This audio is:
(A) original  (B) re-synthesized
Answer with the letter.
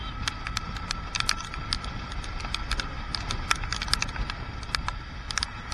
A